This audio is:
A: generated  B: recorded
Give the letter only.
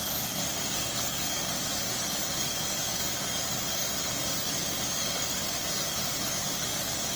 A